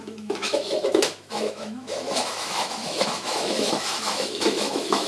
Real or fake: fake